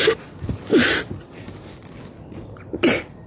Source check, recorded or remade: recorded